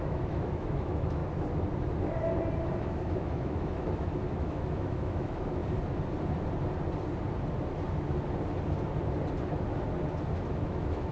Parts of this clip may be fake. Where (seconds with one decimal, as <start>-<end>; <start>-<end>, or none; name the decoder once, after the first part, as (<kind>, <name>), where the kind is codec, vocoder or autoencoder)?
0.0-1.2 (autoencoder, DAC-VAE); 2.8-5.6; 10.3-11.1